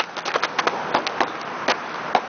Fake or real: real